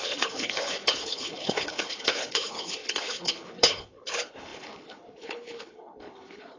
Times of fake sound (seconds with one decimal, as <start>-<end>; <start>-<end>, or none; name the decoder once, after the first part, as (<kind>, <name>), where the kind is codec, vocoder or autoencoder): 0.0-6.6 (codec, HILCodec)